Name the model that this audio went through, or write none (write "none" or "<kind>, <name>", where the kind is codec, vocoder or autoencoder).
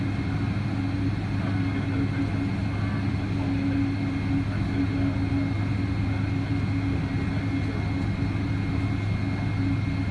none